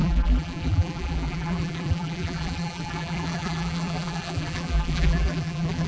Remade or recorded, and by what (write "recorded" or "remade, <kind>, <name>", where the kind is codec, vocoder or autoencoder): remade, vocoder, BigVGAN v2